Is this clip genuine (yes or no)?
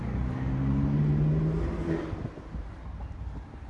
yes